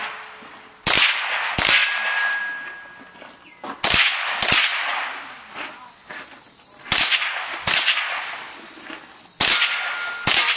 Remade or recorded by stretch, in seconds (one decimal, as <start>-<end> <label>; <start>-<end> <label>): 0.0-10.6 recorded